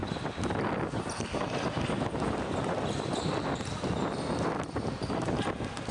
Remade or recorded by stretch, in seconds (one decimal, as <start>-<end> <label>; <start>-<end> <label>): 0.0-5.9 recorded